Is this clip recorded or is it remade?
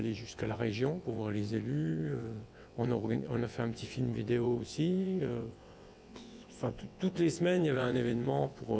remade